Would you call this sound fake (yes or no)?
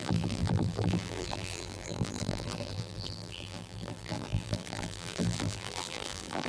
yes